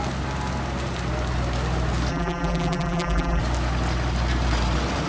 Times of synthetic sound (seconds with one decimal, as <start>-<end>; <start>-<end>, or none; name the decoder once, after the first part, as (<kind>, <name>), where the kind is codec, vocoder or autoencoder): 2.1-3.4 (vocoder, BigVGAN v2)